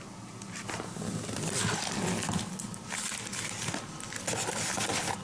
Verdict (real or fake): real